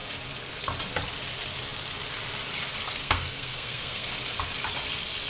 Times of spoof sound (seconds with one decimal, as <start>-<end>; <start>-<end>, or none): 3.0-4.1